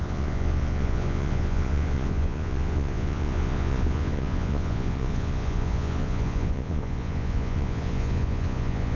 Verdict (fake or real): fake